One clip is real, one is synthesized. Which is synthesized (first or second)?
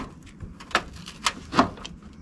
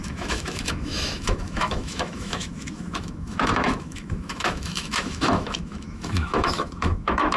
second